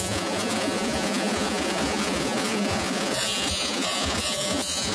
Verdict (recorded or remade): remade